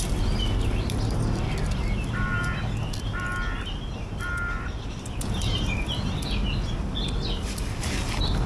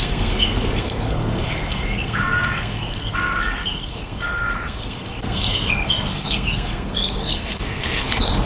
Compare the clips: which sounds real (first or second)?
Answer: first